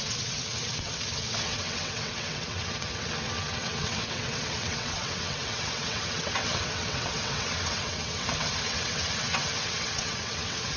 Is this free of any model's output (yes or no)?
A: no